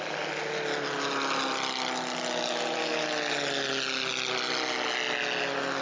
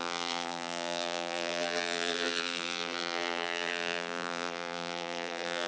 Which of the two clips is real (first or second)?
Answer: first